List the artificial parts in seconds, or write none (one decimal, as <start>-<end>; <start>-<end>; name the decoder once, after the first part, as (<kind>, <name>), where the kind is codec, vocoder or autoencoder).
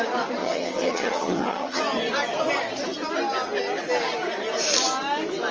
0.4-1.8 (vocoder, HiFi-GAN)